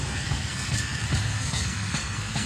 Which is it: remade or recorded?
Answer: remade